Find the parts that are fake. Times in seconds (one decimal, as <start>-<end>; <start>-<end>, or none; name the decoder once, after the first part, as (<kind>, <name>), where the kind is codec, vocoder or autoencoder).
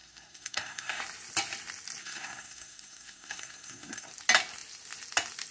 0.0-1.0 (codec, SNAC); 2.0-4.1